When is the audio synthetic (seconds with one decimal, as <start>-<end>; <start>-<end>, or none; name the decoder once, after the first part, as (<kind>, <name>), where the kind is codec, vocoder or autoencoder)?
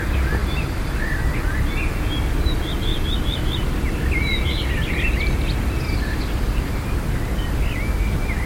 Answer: 0.4-1.9 (vocoder, BigVGAN v2); 2.9-3.8; 4.3-6.7